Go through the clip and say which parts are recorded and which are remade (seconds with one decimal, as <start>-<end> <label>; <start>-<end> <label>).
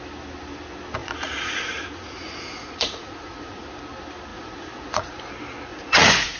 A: 0.0-1.0 recorded; 1.0-3.7 remade; 3.7-4.3 recorded; 4.3-5.1 remade; 5.1-5.7 recorded; 5.7-6.4 remade